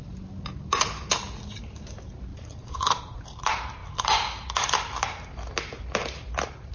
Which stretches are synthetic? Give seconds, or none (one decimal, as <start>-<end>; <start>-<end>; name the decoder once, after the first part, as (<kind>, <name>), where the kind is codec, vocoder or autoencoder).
2.3-3.2 (vocoder, Vocos)